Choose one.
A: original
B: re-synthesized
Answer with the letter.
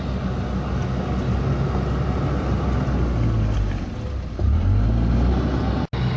A